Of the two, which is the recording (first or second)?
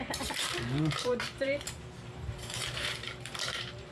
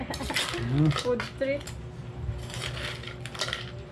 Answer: second